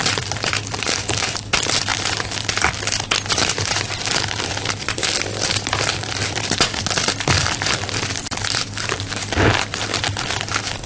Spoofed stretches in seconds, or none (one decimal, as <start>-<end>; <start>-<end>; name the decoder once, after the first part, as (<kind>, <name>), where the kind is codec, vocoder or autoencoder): 0.0-1.9 (vocoder, BigVGAN v2); 3.3-10.9